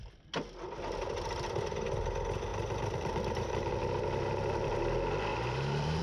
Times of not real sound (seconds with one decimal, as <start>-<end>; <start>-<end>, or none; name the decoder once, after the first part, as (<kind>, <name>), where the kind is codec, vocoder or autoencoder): 2.5-3.7 (vocoder, BigVGAN v2); 5.3-6.0